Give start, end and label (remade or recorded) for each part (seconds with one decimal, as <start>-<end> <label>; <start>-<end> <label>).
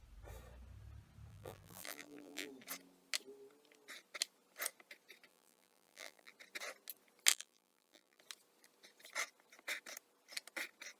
0.0-1.3 recorded; 1.3-2.5 remade; 2.5-5.3 recorded; 5.3-6.3 remade; 6.3-7.3 recorded; 7.3-8.2 remade; 8.2-11.0 recorded